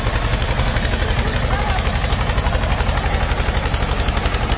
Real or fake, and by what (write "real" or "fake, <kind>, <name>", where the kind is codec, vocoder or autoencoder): real